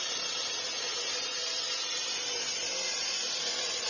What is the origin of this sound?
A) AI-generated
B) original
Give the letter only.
B